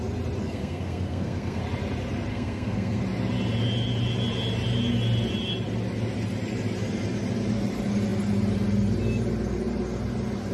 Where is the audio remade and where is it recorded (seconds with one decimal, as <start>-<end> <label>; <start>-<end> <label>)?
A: 0.0-0.4 recorded; 0.4-1.6 remade; 1.6-2.3 recorded; 2.3-3.0 remade; 3.0-10.5 recorded